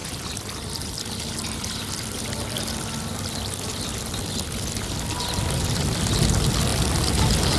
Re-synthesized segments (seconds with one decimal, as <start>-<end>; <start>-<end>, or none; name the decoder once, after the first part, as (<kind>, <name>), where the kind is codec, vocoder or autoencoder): none

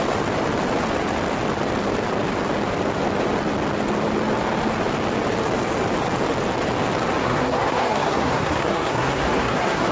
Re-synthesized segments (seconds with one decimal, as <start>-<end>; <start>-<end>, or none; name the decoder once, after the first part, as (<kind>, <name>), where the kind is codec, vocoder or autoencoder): 7.2-9.9 (codec, SNAC)

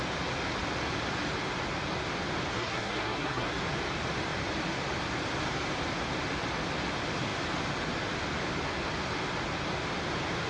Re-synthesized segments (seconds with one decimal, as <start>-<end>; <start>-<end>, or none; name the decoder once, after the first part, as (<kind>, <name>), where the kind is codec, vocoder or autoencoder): 2.5-3.6 (codec, SNAC)

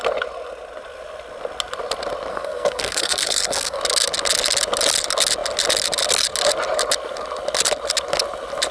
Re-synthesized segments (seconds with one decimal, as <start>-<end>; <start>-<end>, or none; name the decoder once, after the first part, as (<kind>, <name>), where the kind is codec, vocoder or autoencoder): 2.3-3.8 (codec, SNAC)

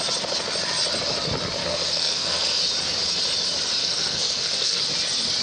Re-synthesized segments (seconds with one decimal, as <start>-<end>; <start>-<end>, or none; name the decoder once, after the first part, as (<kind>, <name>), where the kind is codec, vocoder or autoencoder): 1.6-2.6 (codec, SNAC); 3.8-4.8

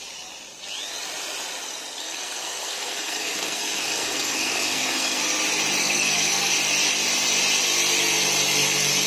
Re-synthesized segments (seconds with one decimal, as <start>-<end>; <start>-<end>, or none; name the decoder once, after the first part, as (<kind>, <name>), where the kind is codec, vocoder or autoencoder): 2.0-5.2 (codec, SNAC); 5.8-6.5

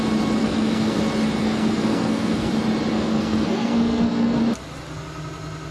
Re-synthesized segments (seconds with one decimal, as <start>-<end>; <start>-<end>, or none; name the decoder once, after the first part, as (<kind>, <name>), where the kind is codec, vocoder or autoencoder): 0.4-1.0 (codec, SNAC); 1.4-2.5; 2.9-4.4

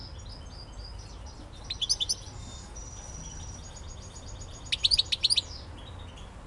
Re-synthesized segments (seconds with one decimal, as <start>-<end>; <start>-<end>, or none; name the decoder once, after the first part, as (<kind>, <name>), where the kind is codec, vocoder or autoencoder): none